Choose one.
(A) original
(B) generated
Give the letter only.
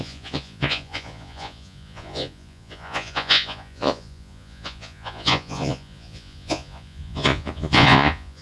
B